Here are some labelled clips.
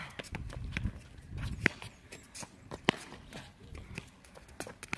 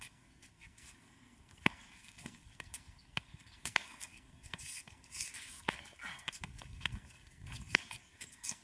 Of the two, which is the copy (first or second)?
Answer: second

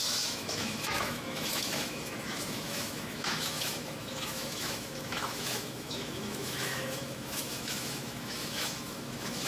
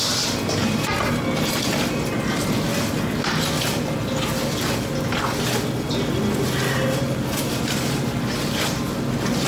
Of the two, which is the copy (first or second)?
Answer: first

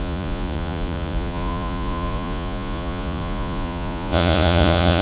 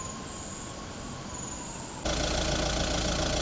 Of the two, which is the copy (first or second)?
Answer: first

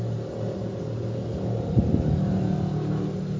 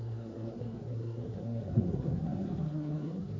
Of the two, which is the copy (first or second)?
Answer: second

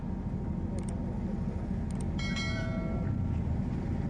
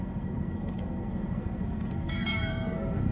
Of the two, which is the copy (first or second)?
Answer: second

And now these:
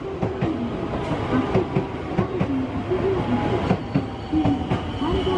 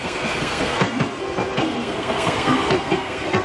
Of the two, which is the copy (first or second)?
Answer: second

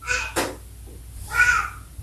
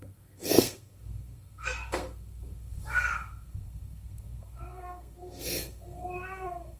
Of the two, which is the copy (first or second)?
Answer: second